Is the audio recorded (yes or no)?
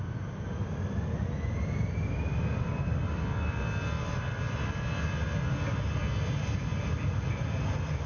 yes